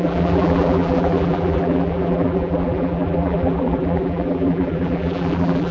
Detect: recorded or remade remade